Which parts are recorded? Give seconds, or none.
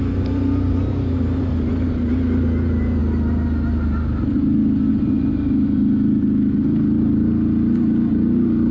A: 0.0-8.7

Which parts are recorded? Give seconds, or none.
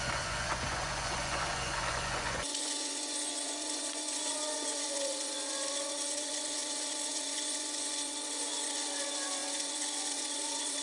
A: none